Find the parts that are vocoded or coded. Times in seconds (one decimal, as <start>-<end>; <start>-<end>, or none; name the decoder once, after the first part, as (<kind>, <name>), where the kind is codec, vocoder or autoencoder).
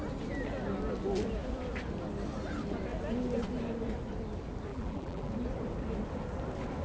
4.7-5.3 (vocoder, BigVGAN v2)